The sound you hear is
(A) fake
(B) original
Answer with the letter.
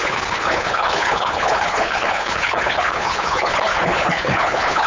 A